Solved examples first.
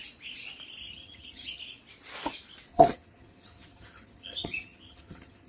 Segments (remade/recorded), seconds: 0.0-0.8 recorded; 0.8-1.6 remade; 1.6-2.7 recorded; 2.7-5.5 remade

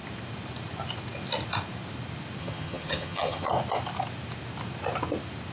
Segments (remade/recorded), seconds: 0.0-2.4 recorded; 2.4-3.5 remade; 3.5-5.5 recorded